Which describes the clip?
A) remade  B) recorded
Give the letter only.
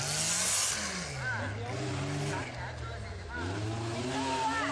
B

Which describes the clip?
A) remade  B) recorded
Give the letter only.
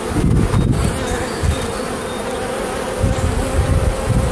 B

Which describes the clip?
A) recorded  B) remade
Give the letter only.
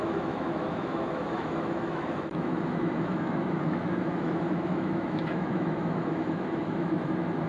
B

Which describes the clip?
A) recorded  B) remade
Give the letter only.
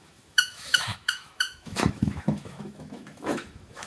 B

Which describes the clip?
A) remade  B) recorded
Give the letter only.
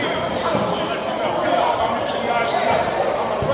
B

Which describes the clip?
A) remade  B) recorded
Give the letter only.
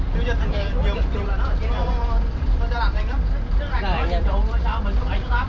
A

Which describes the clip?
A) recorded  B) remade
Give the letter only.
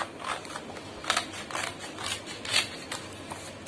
A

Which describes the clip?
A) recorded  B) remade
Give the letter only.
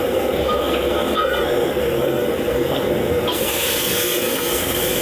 B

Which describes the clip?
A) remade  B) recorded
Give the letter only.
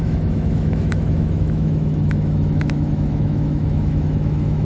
A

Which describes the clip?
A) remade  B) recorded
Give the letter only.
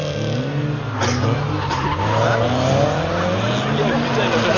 B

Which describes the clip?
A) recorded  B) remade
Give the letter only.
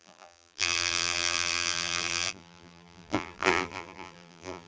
B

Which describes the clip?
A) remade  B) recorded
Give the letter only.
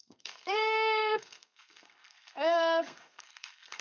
A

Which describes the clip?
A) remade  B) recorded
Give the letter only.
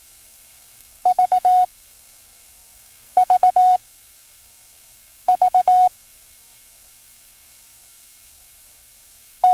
A